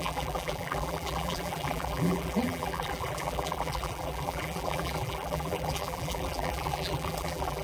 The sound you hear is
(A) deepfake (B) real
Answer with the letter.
A